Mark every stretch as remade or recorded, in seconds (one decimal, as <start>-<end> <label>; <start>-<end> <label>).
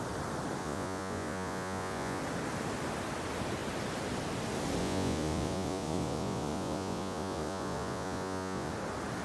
0.0-0.6 recorded; 0.6-2.2 remade; 2.2-4.8 recorded; 4.8-8.7 remade; 8.7-9.2 recorded